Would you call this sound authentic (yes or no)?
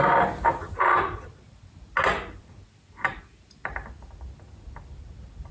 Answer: yes